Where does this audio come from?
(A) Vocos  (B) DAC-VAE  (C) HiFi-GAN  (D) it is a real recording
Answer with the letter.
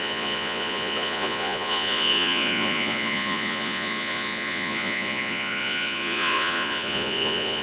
A